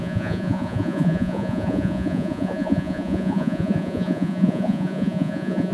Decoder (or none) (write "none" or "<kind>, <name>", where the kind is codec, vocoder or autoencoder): vocoder, Vocos